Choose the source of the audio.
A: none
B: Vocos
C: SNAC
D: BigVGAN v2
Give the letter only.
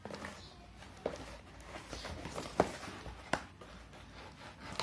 A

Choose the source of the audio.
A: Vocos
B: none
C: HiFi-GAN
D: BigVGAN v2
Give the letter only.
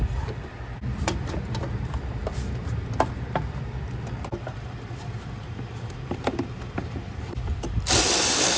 D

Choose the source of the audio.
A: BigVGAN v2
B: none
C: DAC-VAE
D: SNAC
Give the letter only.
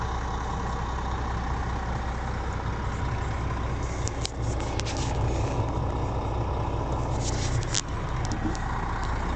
B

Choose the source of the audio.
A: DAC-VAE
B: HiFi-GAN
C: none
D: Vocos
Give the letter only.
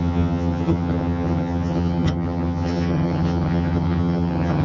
B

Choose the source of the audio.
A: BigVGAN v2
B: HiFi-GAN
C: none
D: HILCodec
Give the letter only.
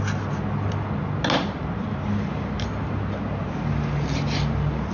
C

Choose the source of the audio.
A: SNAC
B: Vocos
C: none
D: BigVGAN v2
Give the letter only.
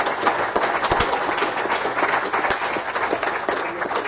B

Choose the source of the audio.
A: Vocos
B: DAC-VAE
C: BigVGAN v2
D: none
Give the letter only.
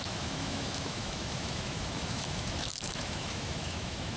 B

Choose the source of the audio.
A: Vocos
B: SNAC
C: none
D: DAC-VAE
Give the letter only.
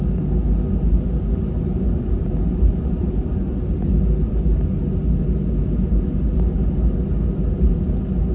C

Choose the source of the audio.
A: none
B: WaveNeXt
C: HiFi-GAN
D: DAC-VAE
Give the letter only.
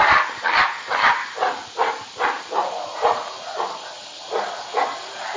A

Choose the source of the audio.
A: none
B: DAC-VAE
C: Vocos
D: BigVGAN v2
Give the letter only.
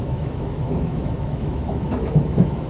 B